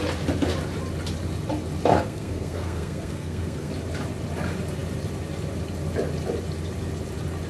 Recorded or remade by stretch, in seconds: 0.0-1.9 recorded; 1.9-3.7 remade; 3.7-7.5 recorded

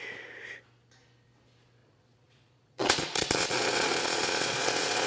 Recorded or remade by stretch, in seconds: 0.0-1.8 recorded; 1.8-5.1 remade

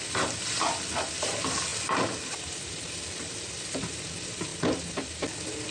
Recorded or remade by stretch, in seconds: 0.0-1.7 recorded; 1.7-3.8 remade; 3.8-4.5 recorded; 4.5-5.7 remade

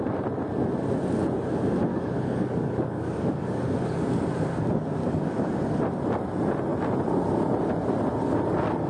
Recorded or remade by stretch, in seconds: 0.0-1.9 recorded; 1.9-3.6 remade; 3.6-5.0 recorded; 5.0-5.7 remade; 5.7-8.9 recorded

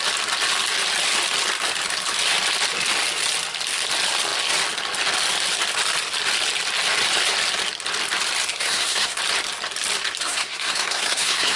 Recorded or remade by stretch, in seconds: 0.0-8.5 recorded; 8.5-9.2 remade; 9.2-10.2 recorded; 10.2-11.6 remade